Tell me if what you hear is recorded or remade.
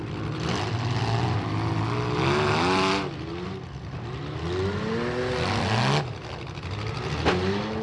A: recorded